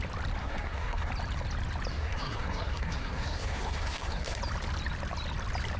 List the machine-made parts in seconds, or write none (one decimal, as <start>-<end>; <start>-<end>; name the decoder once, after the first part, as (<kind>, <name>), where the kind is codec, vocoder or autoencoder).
0.4-1.1 (codec, SNAC); 1.9-4.4